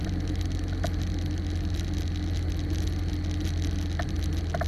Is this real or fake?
fake